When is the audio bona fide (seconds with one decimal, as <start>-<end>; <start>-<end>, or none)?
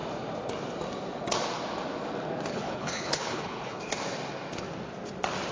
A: 0.0-2.5; 3.8-5.5